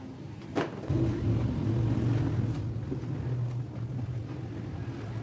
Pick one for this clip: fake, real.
real